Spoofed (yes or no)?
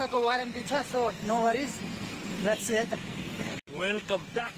yes